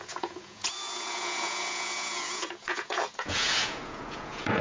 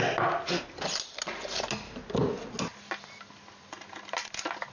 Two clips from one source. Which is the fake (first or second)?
first